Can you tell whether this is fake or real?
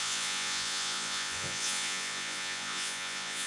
fake